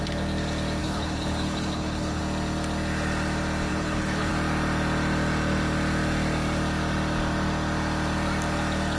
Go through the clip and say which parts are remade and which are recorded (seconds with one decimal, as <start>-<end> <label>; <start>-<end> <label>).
0.0-0.8 recorded; 0.8-2.2 remade; 2.2-3.7 recorded; 3.7-4.3 remade; 4.3-9.0 recorded